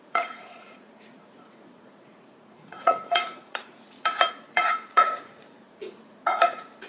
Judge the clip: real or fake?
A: fake